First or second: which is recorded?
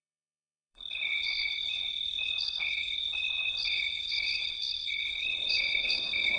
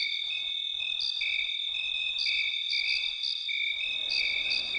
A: second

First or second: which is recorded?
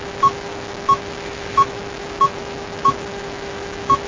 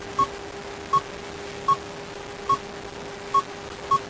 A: second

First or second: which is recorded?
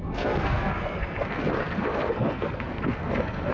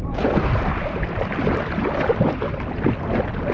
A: second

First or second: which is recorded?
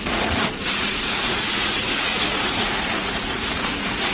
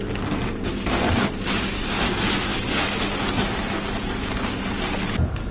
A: second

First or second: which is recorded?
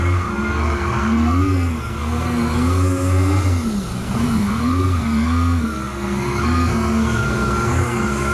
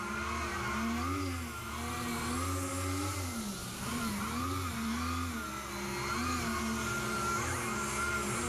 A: second